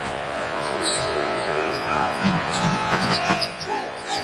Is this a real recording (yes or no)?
no